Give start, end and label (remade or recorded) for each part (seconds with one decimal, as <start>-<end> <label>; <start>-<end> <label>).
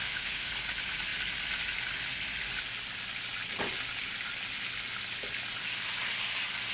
0.0-0.5 remade; 0.5-6.7 recorded